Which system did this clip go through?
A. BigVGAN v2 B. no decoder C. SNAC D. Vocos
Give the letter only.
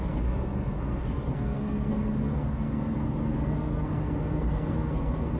C